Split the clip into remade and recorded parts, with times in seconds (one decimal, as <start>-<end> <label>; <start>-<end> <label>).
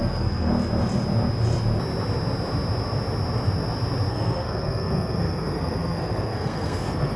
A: 0.0-0.5 remade; 0.5-4.1 recorded; 4.1-7.2 remade